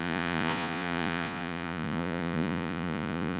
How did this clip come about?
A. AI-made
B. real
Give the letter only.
A